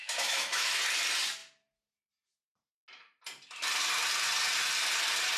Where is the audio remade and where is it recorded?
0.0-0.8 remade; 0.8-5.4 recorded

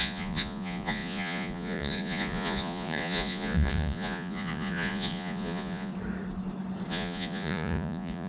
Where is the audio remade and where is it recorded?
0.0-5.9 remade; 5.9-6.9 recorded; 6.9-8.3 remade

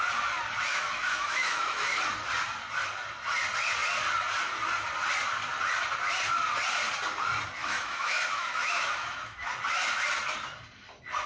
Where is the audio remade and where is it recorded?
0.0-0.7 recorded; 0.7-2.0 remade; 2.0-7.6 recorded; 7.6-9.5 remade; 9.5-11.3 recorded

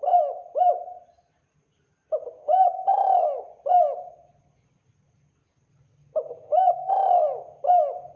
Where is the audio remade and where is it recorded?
0.0-2.9 recorded; 2.9-3.4 remade; 3.4-6.0 recorded; 6.0-6.9 remade; 6.9-8.2 recorded

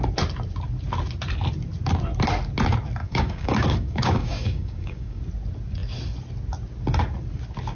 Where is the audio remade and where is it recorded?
0.0-3.0 recorded; 3.0-5.2 remade; 5.2-7.8 recorded